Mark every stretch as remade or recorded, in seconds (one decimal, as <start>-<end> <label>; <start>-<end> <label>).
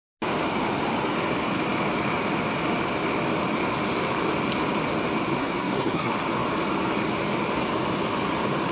0.0-5.3 recorded; 5.3-6.1 remade; 6.1-8.7 recorded